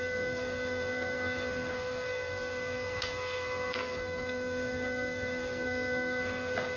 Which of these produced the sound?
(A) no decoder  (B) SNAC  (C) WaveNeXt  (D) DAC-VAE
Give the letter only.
B